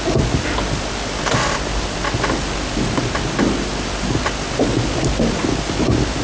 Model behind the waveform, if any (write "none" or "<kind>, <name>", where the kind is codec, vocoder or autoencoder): none